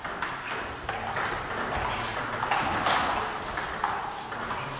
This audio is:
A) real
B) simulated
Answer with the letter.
A